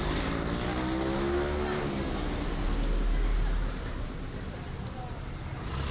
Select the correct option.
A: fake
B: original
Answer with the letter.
B